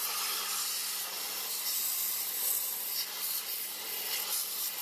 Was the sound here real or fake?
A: real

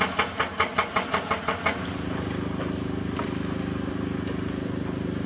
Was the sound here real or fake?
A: real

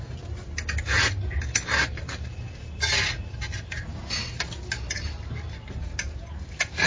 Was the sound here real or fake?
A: real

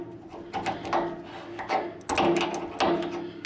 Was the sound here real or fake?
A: real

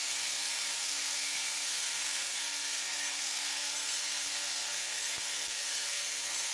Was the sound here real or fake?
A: fake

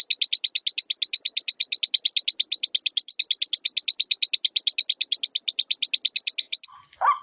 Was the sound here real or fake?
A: real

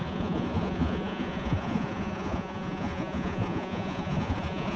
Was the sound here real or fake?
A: fake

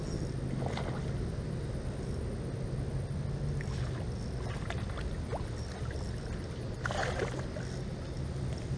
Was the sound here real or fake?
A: real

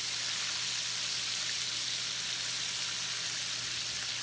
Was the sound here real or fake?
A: real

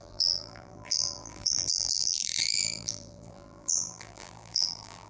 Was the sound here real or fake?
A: fake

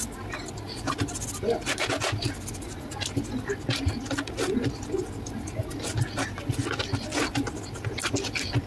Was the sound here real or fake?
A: real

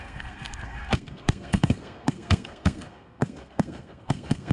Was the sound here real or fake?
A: fake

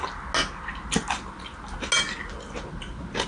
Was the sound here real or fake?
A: real